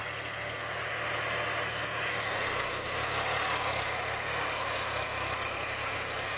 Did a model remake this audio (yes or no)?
no